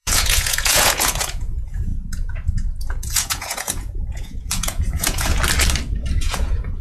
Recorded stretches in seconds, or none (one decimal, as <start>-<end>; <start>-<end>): 5.4-6.2